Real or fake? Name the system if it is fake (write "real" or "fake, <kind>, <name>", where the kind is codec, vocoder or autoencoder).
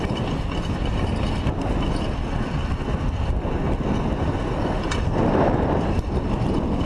real